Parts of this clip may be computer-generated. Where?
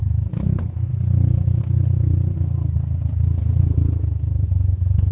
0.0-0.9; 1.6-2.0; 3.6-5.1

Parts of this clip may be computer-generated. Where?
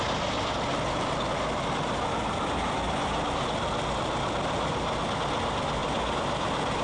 5.8-6.8